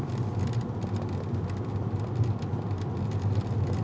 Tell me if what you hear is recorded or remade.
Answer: recorded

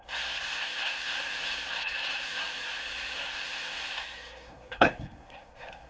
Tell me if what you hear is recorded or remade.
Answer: remade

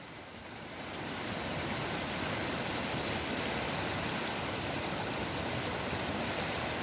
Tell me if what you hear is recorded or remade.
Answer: recorded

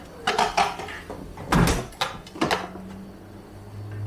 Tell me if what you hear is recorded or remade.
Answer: recorded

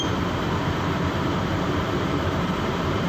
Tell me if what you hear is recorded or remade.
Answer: remade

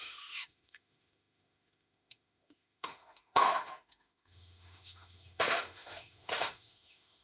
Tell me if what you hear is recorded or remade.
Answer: remade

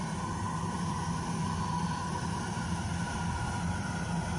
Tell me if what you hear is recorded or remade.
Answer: recorded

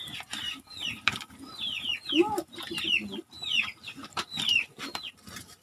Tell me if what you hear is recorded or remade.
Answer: remade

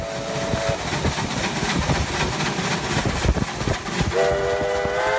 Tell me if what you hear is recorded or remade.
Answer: recorded